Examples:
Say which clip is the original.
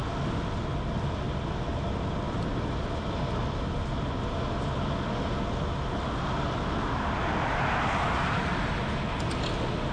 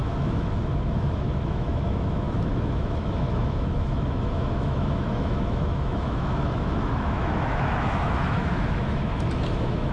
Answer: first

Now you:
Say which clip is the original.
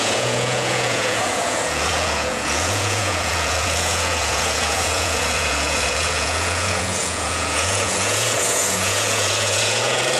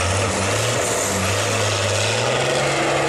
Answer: second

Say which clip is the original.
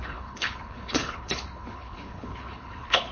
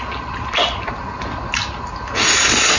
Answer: second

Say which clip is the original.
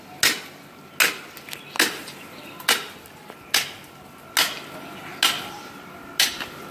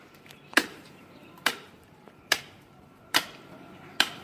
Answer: first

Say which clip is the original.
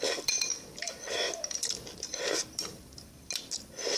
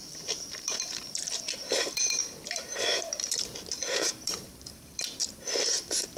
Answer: first